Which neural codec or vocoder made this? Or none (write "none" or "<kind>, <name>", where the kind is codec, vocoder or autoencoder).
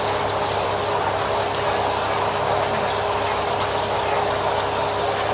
none